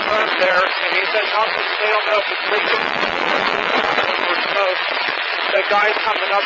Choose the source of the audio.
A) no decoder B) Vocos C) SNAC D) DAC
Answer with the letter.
B